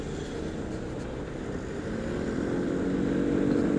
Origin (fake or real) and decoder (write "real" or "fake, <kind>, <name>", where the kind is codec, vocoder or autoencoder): real